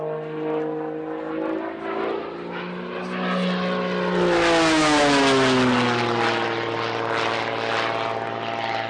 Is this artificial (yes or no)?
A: no